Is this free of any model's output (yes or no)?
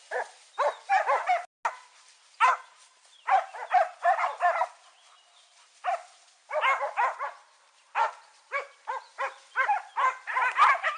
yes